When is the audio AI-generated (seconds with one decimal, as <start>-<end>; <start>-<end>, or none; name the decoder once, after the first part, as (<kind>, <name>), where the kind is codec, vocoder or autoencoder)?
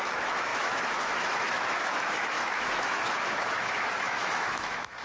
0.0-5.0 (autoencoder, DAC-VAE)